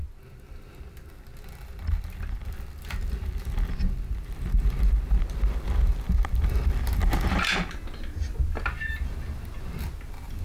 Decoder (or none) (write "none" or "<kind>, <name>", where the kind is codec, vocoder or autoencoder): none